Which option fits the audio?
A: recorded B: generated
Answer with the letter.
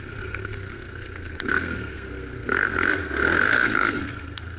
B